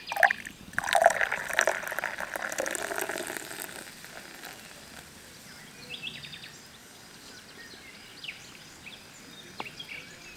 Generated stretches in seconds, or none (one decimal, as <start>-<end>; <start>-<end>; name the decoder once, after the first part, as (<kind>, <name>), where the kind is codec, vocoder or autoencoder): 6.8-7.3 (codec, DAC)